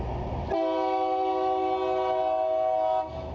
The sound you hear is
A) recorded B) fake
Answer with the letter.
A